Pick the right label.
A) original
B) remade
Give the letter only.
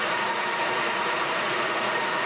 B